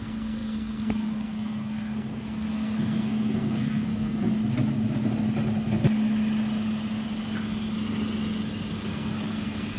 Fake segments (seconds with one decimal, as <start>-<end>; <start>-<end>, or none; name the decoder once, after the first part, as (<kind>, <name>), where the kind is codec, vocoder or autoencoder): 0.0-4.3 (codec, SNAC); 8.8-9.8